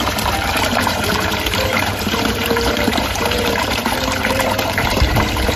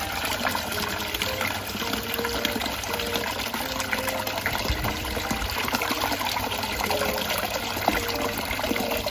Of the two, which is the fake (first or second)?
first